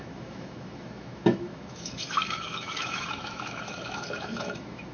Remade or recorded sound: remade